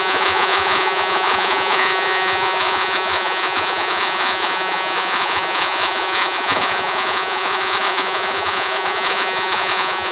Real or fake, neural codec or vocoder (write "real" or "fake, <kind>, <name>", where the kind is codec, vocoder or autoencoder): fake, vocoder, Vocos